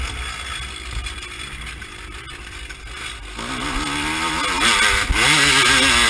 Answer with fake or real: real